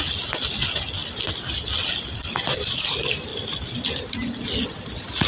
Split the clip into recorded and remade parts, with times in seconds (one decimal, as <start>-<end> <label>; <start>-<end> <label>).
0.0-3.3 recorded; 3.3-3.9 remade; 3.9-5.3 recorded